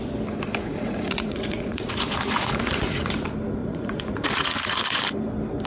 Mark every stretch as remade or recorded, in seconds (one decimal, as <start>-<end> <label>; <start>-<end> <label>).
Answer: 0.0-0.6 recorded; 0.6-3.1 remade; 3.1-3.6 recorded; 3.6-5.0 remade; 5.0-5.7 recorded